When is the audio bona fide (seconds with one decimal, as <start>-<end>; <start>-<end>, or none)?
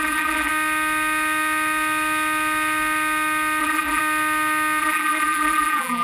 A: 0.5-3.6; 4.0-4.8